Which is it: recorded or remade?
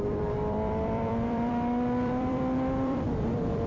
remade